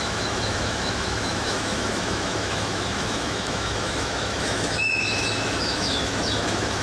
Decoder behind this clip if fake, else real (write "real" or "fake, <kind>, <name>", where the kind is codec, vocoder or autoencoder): fake, autoencoder, DAC-VAE